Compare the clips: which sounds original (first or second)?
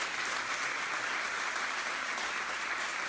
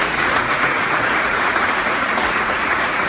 first